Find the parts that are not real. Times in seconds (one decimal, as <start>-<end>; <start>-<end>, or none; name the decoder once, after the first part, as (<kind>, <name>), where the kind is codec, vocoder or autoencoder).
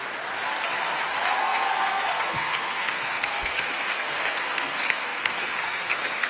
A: 1.4-6.3 (codec, SNAC)